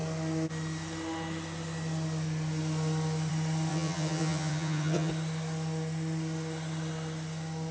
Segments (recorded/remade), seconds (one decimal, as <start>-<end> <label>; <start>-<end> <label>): 0.0-3.7 recorded; 3.7-5.1 remade; 5.1-7.7 recorded